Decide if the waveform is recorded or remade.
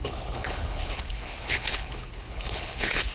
remade